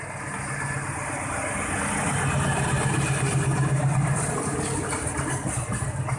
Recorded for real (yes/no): yes